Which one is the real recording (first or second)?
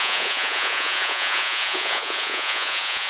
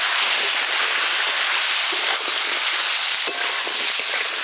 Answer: second